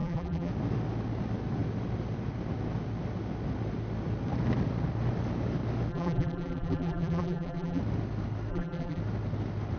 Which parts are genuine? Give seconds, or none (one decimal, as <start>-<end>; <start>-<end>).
0.5-5.9; 7.8-8.5; 9.0-9.8

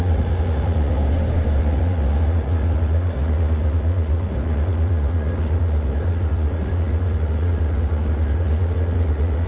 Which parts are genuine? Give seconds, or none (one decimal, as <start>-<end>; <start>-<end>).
1.0-1.6